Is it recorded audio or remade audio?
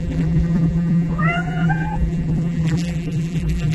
remade